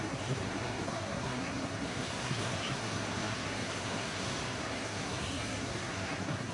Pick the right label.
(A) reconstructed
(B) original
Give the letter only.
A